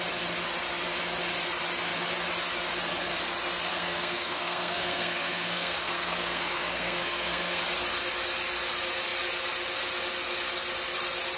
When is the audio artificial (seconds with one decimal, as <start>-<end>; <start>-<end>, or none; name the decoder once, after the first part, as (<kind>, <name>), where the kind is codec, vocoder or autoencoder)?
3.7-7.6 (codec, SNAC)